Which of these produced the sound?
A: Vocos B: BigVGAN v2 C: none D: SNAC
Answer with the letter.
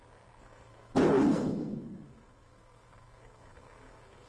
D